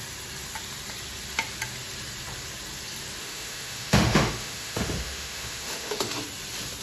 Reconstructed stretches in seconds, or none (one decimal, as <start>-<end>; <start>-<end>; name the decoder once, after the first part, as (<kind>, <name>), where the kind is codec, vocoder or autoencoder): 3.2-6.2 (autoencoder, DAC-VAE)